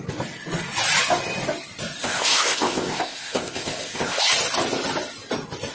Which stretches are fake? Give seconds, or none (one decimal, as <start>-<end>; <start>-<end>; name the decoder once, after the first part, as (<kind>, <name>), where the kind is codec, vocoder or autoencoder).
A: 2.0-4.3 (codec, ZipCodec)